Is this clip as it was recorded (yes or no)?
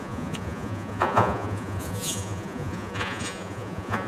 no